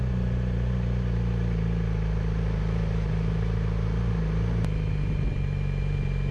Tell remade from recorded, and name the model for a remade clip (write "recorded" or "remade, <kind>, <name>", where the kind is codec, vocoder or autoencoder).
recorded